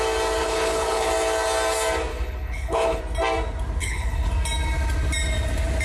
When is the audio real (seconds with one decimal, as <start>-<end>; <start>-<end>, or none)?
0.0-0.4; 1.1-2.1; 3.0-3.8; 4.3-5.8